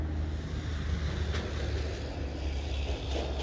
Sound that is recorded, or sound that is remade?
recorded